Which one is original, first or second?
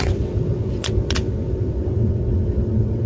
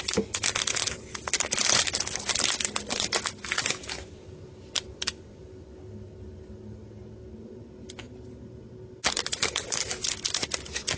second